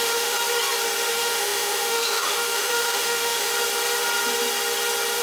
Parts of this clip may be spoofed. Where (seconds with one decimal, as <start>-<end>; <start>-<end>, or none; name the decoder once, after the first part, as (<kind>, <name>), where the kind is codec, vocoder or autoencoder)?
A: 0.0-0.4 (autoencoder, DAC-VAE); 1.1-3.5

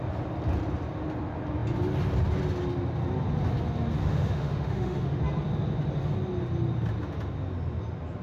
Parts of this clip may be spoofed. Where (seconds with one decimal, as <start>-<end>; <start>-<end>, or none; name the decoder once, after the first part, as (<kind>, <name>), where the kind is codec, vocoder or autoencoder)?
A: 4.0-5.2 (autoencoder, DAC-VAE)

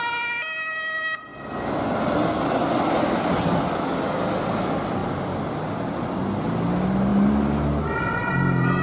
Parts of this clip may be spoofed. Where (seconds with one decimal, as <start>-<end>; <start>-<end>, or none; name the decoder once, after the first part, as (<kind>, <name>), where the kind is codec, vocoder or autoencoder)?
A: none

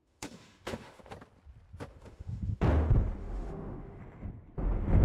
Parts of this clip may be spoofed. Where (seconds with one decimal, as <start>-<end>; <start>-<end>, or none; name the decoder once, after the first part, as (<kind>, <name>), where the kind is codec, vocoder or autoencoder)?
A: 0.0-1.1 (autoencoder, DAC-VAE); 1.9-2.6; 3.2-4.0

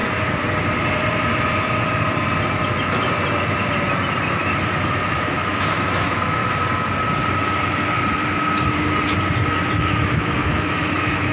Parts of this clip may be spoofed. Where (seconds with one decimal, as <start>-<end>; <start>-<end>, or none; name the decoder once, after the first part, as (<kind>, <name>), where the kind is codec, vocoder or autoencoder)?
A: 5.1-6.4 (autoencoder, DAC-VAE); 9.8-11.3

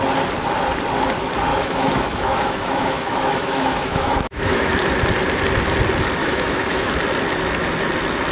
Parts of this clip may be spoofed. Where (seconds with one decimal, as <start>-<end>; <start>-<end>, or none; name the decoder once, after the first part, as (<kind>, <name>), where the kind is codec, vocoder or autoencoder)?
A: 1.5-4.7 (autoencoder, DAC-VAE); 6.2-6.9

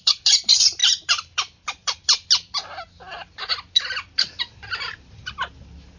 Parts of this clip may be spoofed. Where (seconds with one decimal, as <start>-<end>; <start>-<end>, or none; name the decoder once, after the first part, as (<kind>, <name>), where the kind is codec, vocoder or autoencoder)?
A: none